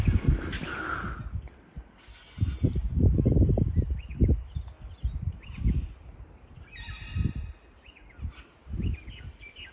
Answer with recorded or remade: recorded